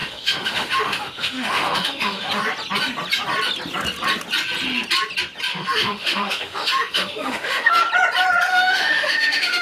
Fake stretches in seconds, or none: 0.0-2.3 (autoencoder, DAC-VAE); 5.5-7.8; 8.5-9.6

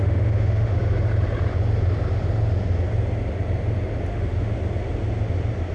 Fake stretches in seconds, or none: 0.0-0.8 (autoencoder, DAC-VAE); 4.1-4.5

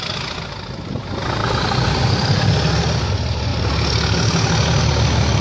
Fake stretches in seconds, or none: none

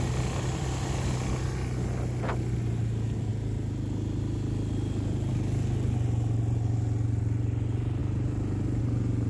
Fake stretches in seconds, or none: none

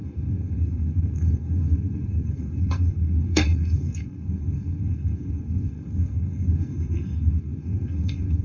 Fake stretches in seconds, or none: 0.0-8.4 (codec, SNAC)

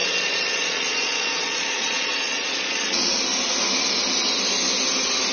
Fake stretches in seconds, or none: 0.0-3.2 (vocoder, Vocos)